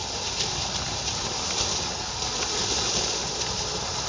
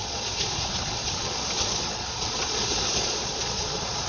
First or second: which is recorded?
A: first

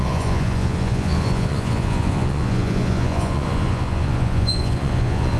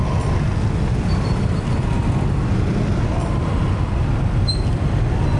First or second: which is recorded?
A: second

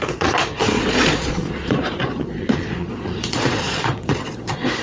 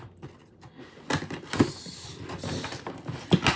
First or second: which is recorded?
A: second